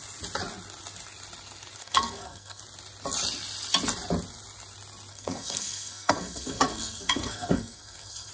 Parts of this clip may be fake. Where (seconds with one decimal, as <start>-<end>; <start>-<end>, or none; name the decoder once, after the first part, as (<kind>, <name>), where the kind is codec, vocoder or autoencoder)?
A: 1.8-2.6 (codec, SNAC); 5.1-8.3